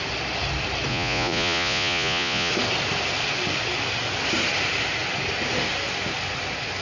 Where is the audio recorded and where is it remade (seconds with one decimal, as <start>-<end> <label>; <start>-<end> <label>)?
0.0-0.9 recorded; 0.9-2.5 remade; 2.5-6.8 recorded